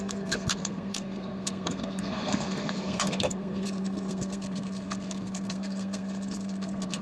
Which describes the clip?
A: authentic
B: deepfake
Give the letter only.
B